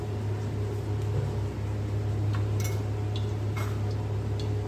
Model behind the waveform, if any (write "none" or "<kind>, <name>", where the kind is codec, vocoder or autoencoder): none